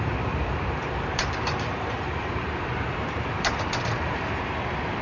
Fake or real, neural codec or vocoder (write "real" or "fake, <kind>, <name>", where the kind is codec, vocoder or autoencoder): fake, vocoder, BigVGAN v2